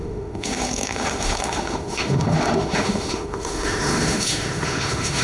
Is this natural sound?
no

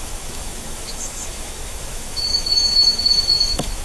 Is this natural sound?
no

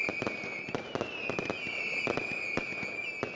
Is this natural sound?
yes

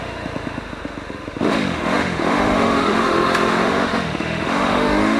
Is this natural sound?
no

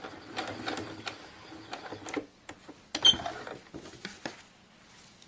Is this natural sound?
yes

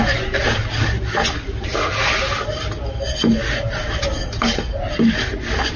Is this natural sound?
yes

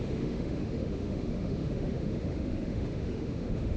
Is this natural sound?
no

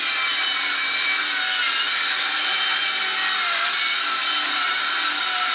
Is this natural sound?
yes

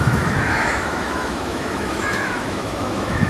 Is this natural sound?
no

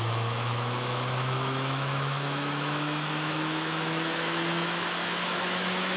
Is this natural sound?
no